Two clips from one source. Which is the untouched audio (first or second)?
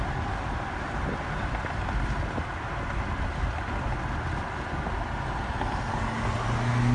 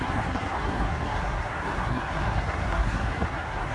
first